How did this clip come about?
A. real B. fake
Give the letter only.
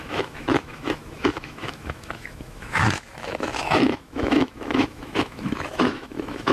B